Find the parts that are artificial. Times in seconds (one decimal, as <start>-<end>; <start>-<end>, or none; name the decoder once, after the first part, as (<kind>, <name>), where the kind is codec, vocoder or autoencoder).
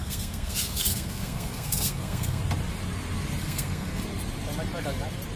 0.0-2.4 (codec, SNAC); 3.4-4.0